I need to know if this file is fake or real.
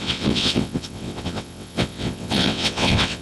fake